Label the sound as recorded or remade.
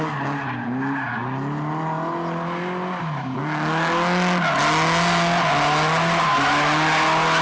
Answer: recorded